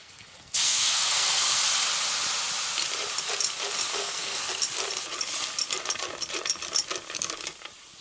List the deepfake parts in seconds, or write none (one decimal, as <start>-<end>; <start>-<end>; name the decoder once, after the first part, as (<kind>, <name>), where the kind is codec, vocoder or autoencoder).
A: 0.0-1.6 (codec, SNAC); 3.9-4.4